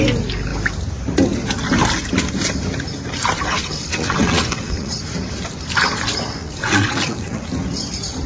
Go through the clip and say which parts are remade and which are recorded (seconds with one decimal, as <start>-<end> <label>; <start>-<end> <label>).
0.0-3.5 recorded; 3.5-5.0 remade; 5.0-6.4 recorded; 6.4-7.5 remade; 7.5-8.3 recorded